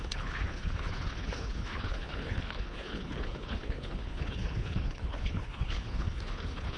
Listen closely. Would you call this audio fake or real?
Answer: fake